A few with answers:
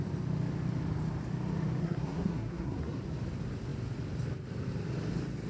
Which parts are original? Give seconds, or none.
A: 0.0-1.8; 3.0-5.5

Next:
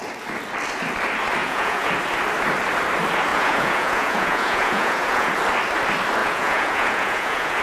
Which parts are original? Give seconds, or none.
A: 0.0-1.4; 1.9-3.3; 5.3-6.2